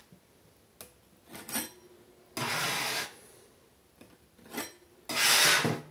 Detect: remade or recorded recorded